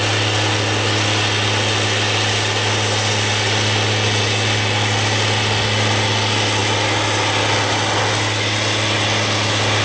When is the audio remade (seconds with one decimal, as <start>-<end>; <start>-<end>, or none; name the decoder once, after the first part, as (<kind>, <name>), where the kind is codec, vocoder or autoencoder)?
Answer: none